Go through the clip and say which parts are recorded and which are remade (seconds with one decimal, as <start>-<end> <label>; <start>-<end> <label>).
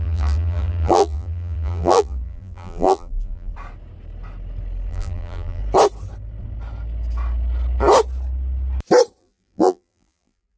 0.0-3.5 remade; 3.5-4.9 recorded; 4.9-5.6 remade; 5.6-9.2 recorded; 9.2-10.6 remade